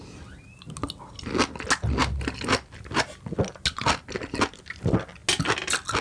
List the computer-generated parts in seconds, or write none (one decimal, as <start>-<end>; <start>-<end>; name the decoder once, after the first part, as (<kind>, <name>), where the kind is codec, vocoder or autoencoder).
none